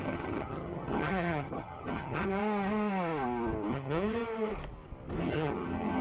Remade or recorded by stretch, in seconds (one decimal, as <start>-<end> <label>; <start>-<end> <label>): 0.0-2.4 remade; 2.4-3.7 recorded; 3.7-4.2 remade; 4.2-5.2 recorded; 5.2-6.0 remade